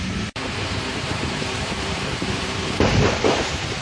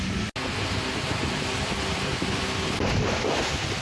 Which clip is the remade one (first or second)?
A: first